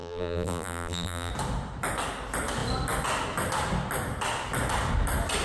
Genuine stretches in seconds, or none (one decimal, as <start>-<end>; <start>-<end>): 1.3-5.4